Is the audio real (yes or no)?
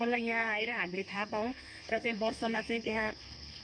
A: no